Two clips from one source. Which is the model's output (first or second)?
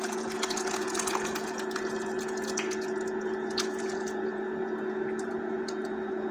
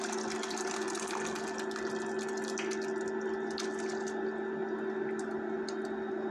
first